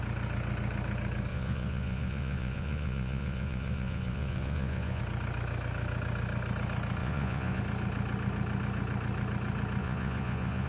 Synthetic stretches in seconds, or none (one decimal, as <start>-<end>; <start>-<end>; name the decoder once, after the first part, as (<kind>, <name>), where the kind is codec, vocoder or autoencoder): 1.3-5.0 (vocoder, Vocos); 7.0-7.6; 9.8-10.7